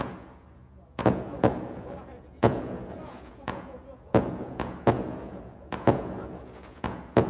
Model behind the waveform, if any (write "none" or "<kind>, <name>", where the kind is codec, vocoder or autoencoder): vocoder, Vocos